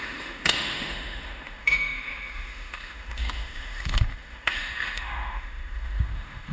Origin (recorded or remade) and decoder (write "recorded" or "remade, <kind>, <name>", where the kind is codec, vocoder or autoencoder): remade, autoencoder, DAC-VAE